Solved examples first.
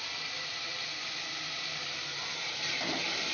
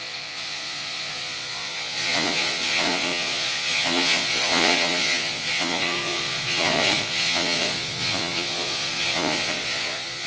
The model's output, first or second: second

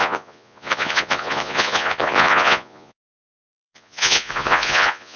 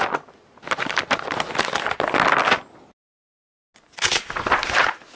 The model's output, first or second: first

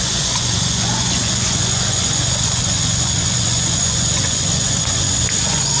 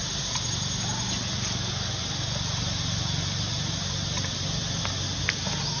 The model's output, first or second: first